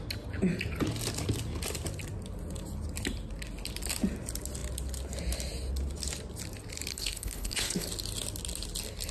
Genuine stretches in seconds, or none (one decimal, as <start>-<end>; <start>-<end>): 0.0-6.9; 7.9-9.1